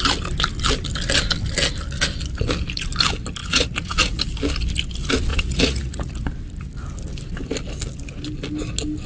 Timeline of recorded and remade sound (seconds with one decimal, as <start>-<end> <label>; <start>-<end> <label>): 0.0-3.4 recorded; 3.4-4.2 remade; 4.2-5.3 recorded; 5.3-6.1 remade; 6.1-9.1 recorded